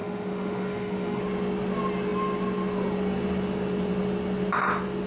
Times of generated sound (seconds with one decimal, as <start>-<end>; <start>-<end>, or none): 0.0-1.2